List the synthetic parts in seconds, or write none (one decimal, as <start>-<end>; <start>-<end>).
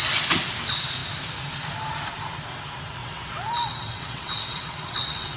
3.0-5.4